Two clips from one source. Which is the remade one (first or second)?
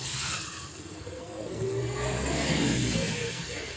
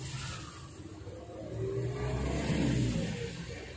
first